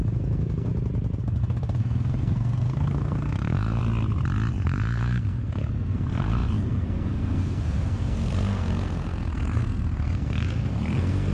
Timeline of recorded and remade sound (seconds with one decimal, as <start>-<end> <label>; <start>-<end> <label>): 0.0-0.7 remade; 0.7-1.2 recorded; 1.2-3.8 remade; 3.8-4.5 recorded; 4.5-11.3 remade